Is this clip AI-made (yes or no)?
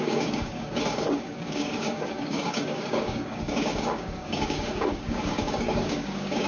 yes